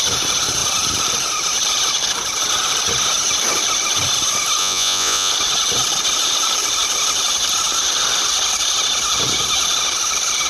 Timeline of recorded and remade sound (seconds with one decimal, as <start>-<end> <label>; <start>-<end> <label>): 0.0-4.6 recorded; 4.6-5.3 remade; 5.3-10.5 recorded